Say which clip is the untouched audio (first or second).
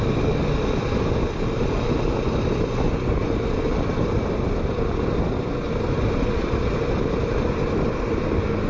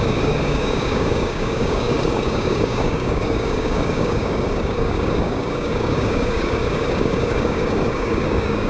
first